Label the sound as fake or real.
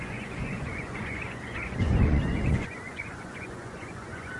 fake